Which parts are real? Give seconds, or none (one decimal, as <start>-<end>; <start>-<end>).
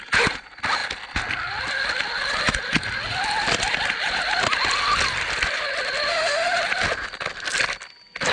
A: 0.0-6.1; 6.6-8.3